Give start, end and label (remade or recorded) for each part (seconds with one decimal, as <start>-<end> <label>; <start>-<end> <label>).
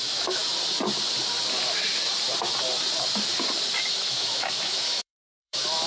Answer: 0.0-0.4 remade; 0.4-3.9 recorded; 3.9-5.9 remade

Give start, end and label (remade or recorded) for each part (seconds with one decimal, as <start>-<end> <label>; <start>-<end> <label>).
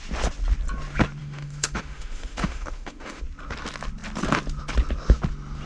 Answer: 0.0-1.2 recorded; 1.2-3.2 remade; 3.2-5.7 recorded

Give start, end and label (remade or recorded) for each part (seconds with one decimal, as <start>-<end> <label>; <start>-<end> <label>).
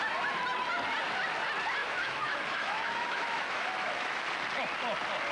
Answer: 0.0-1.8 recorded; 1.8-4.3 remade; 4.3-5.3 recorded